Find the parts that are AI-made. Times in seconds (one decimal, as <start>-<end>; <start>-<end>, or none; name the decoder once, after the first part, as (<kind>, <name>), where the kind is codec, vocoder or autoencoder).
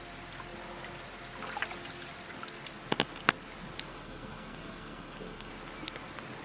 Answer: 3.9-5.5 (codec, SNAC)